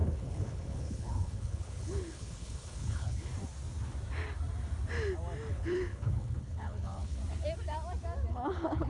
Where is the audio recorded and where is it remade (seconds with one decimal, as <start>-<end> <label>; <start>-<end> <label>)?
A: 0.0-3.3 remade; 3.3-5.5 recorded; 5.5-7.2 remade; 7.2-8.3 recorded; 8.3-8.9 remade